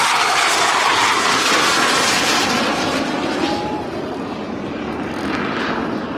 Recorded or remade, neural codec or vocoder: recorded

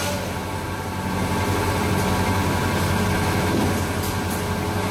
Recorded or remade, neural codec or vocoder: recorded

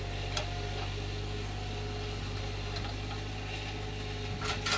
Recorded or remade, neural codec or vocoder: recorded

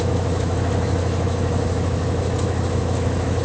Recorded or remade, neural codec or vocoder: remade, autoencoder, DAC-VAE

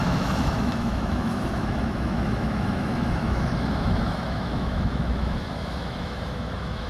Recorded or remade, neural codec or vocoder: remade, autoencoder, DAC-VAE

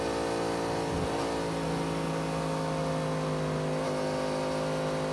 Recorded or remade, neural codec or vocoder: recorded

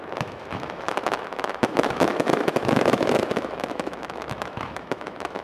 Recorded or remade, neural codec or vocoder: remade, autoencoder, DAC-VAE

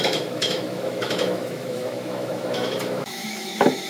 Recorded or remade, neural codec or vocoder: remade, autoencoder, DAC-VAE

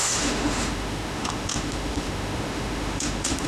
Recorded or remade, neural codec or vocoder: remade, autoencoder, DAC-VAE